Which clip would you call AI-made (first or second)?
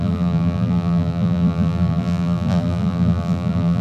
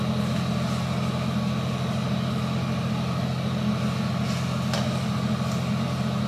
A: first